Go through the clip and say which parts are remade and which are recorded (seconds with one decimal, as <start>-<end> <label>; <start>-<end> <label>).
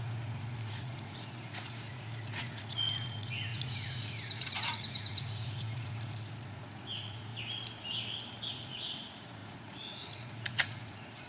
0.0-7.3 remade; 7.3-8.5 recorded; 8.5-11.3 remade